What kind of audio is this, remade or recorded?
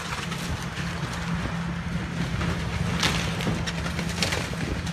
recorded